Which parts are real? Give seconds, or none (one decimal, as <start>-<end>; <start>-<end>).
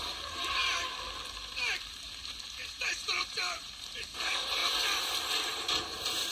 0.6-1.3; 4.6-5.5